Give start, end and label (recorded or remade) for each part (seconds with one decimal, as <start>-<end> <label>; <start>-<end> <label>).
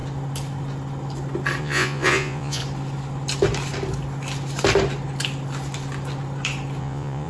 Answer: 0.0-1.6 recorded; 1.6-2.6 remade; 2.6-6.8 recorded; 6.8-7.3 remade